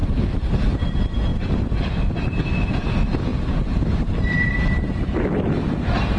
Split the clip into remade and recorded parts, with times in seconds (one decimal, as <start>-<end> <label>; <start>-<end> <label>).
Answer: 0.0-3.3 recorded; 3.3-4.5 remade; 4.5-6.2 recorded